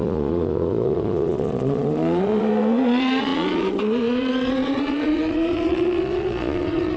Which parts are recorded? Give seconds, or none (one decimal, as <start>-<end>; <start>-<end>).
none